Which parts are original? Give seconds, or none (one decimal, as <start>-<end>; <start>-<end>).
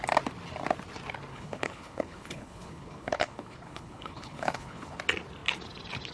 0.0-1.3; 5.0-6.1